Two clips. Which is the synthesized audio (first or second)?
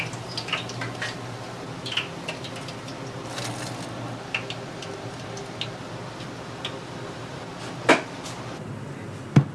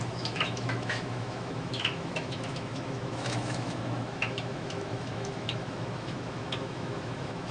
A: second